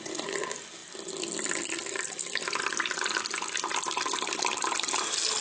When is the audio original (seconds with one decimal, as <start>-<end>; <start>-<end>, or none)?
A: 0.0-5.4